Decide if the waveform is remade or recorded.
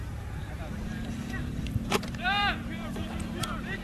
remade